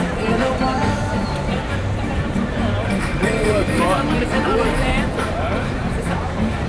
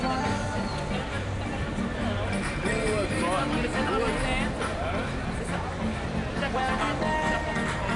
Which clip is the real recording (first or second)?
second